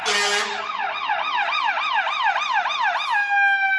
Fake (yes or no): no